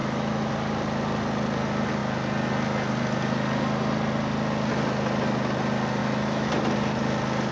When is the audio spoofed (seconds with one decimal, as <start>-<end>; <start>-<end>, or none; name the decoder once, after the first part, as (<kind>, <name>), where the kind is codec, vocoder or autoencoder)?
0.0-0.5 (autoencoder, DAC-VAE); 6.0-6.5